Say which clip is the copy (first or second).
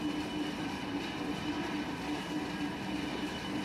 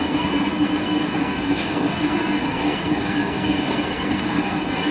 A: second